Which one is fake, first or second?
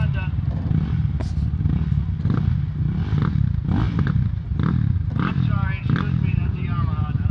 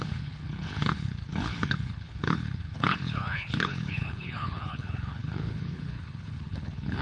second